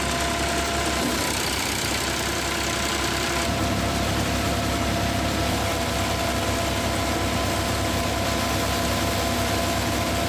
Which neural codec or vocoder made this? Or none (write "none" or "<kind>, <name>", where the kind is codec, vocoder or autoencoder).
none